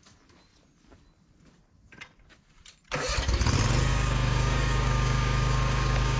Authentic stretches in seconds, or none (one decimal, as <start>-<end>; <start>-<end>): 0.0-3.9

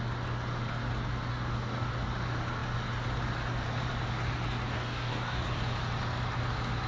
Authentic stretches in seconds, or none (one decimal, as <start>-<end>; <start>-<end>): 0.0-1.3; 1.9-4.7; 5.4-6.9